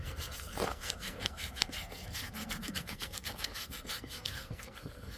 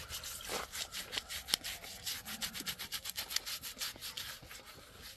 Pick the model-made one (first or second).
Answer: first